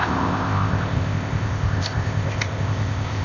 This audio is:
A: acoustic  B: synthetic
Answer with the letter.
B